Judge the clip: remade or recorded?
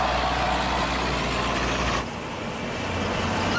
recorded